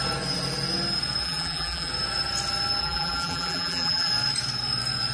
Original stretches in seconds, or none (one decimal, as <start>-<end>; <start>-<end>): 0.0-1.2; 1.9-2.8; 4.1-5.1